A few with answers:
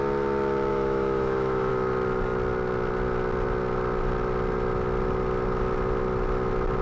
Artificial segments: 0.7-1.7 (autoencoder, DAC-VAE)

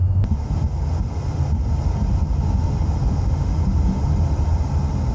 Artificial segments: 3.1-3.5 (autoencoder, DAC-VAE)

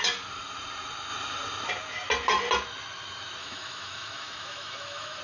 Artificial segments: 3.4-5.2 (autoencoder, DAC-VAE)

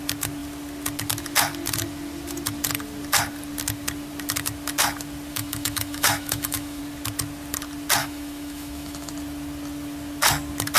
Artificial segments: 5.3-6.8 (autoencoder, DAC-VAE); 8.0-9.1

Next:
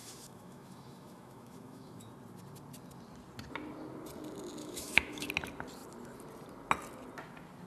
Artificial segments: 0.0-2.1 (autoencoder, DAC-VAE); 4.6-5.3

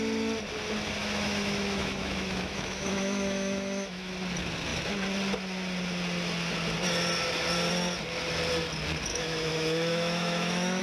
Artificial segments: 1.0-4.1 (autoencoder, DAC-VAE); 9.1-10.8